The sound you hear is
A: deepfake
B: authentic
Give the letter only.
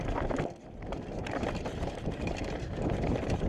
B